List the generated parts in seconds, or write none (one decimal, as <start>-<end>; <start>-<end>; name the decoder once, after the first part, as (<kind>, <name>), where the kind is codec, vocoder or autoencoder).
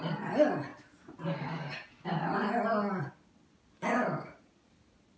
none